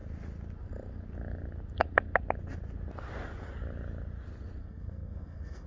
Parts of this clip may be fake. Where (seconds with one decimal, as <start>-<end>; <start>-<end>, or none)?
4.6-5.7